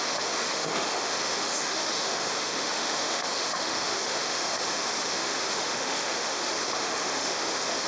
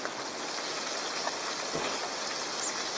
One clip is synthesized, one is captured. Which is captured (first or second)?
second